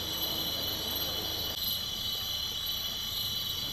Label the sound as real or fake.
real